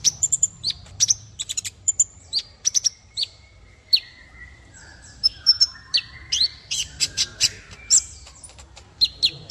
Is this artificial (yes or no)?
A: yes